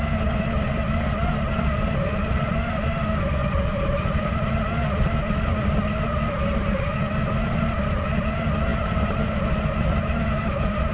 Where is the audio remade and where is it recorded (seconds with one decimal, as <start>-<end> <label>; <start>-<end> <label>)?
0.0-3.4 recorded; 3.4-4.5 remade; 4.5-8.7 recorded; 8.7-9.2 remade; 9.2-10.9 recorded